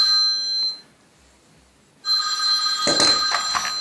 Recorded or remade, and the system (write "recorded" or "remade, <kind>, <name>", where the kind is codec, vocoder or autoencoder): recorded